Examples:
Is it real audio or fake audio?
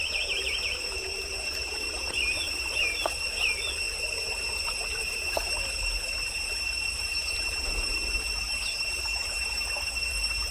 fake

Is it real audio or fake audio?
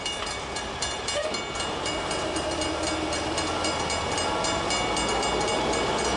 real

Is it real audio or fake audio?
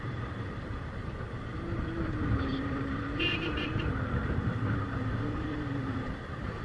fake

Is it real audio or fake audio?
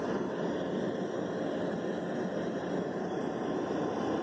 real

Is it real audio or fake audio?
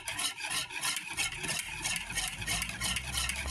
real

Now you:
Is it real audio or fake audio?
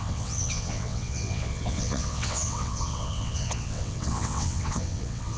fake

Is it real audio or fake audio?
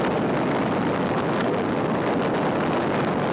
real